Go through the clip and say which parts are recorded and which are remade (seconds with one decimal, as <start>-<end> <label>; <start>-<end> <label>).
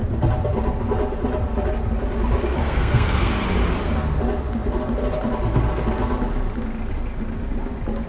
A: 0.0-2.6 recorded; 2.6-3.3 remade; 3.3-8.1 recorded